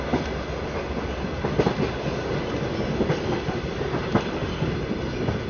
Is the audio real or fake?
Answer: real